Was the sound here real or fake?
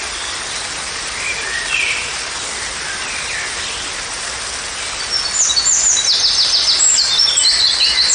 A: real